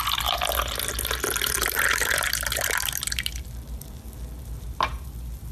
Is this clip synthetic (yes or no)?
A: no